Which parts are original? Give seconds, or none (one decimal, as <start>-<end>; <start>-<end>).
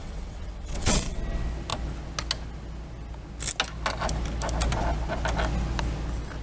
1.2-6.4